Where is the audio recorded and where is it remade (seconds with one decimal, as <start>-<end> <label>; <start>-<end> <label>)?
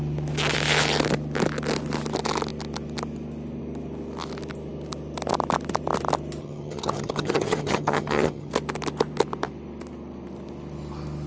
0.0-6.4 recorded; 6.4-8.5 remade; 8.5-11.3 recorded